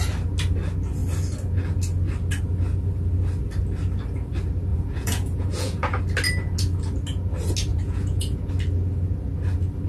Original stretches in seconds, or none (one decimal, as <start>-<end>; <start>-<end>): 0.0-4.7; 6.0-7.7; 8.5-9.9

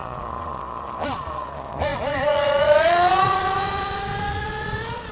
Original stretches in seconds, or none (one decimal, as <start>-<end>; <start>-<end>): none

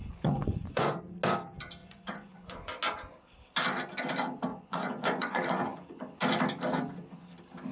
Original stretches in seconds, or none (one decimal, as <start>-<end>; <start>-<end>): 1.0-1.8; 2.8-4.5; 6.0-7.7

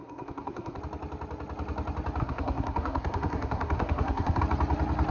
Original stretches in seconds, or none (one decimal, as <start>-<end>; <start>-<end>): 0.8-2.2; 4.4-5.1

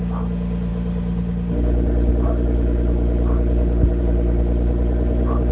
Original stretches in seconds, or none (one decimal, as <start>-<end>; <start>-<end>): 0.0-5.5

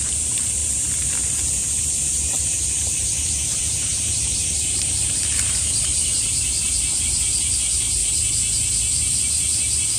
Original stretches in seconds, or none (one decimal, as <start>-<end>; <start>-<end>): 0.6-1.8; 8.0-10.0

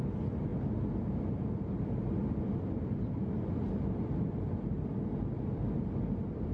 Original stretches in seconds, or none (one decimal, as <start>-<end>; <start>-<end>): 0.0-6.5